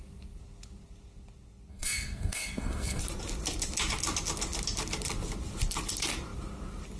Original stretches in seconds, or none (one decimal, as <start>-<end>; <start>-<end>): 0.0-1.7; 3.0-7.0